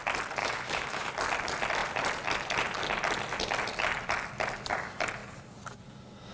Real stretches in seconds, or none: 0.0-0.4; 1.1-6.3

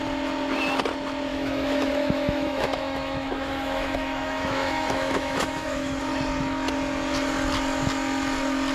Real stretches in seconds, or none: 0.0-1.3; 6.0-8.7

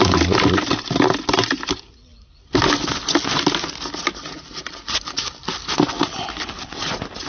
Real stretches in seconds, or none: 0.0-7.3

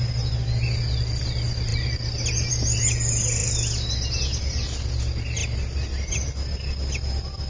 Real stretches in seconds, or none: 0.0-7.5

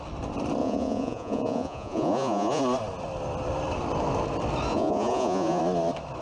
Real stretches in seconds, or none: 0.0-0.6; 2.6-4.7; 5.6-6.2

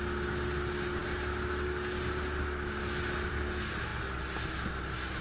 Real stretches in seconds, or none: 0.0-5.2